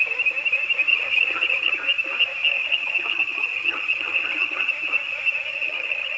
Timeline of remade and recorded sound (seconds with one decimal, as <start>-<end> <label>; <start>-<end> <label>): 0.0-0.9 recorded; 0.9-1.7 remade; 1.7-2.5 recorded; 2.5-4.7 remade; 4.7-5.5 recorded; 5.5-6.2 remade